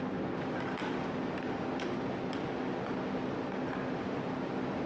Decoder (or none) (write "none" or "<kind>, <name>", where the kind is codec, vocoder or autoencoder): none